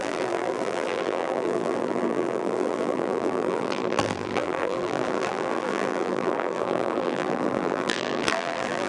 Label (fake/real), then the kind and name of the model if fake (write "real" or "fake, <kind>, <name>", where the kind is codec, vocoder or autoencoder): fake, vocoder, BigVGAN v2